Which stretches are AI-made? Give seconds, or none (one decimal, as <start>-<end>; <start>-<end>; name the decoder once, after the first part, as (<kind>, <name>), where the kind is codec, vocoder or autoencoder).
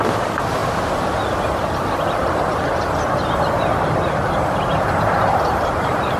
0.0-0.6 (vocoder, BigVGAN v2); 3.8-6.2